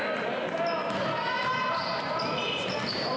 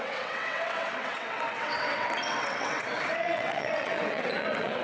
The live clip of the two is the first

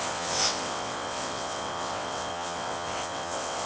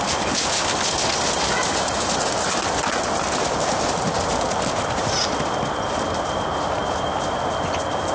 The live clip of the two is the second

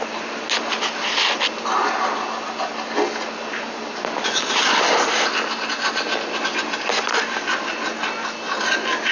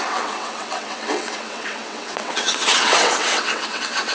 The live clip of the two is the first